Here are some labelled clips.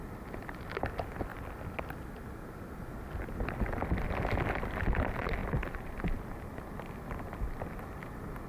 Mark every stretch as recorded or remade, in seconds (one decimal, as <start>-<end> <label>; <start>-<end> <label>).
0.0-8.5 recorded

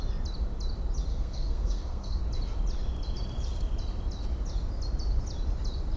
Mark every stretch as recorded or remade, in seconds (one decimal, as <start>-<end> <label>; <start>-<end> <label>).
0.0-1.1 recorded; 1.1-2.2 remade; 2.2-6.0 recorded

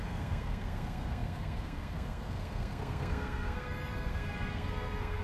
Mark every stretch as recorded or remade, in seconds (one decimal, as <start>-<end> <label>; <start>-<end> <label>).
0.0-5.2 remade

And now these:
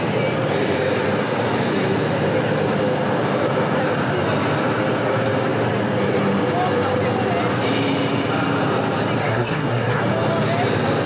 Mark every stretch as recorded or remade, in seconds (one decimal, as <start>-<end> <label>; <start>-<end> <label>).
0.0-9.2 recorded; 9.2-10.0 remade; 10.0-11.1 recorded

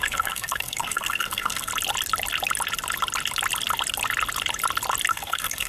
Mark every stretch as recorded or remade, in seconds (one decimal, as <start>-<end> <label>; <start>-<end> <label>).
0.0-1.7 remade; 1.7-5.1 recorded; 5.1-5.7 remade

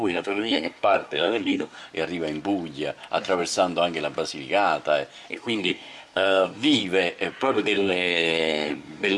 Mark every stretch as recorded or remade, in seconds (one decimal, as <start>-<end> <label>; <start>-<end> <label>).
0.0-1.8 remade; 1.8-5.3 recorded; 5.3-6.8 remade; 6.8-7.4 recorded; 7.4-9.2 remade